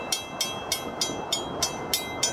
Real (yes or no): yes